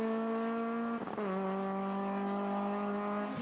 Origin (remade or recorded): recorded